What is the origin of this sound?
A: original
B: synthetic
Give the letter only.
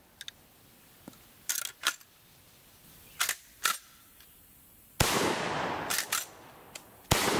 A